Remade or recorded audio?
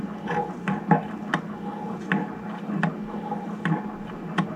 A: recorded